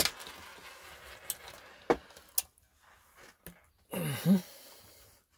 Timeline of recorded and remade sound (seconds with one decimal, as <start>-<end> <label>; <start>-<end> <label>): 0.0-5.4 recorded